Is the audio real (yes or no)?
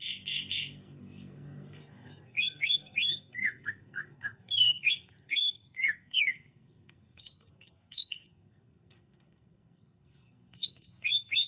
no